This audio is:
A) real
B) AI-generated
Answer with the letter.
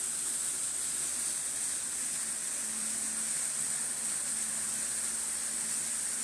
A